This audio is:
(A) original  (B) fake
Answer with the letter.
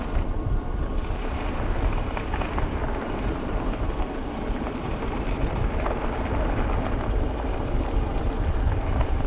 B